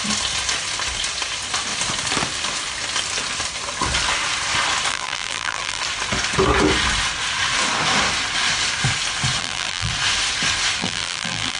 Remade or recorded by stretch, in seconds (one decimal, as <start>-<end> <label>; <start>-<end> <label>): 0.0-4.9 recorded; 4.9-5.8 remade; 5.8-9.4 recorded; 9.4-9.9 remade; 9.9-10.8 recorded; 10.8-11.6 remade